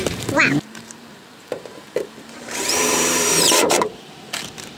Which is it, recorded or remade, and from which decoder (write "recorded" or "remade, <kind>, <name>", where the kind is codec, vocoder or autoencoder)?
remade, vocoder, BigVGAN v2